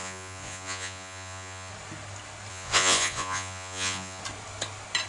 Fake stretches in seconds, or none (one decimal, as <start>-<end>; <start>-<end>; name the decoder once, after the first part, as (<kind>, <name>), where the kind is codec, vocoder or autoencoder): 0.0-1.7 (vocoder, Vocos); 2.5-4.2